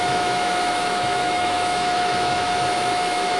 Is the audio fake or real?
fake